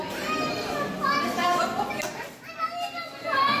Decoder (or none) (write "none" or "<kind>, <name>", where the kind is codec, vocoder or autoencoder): none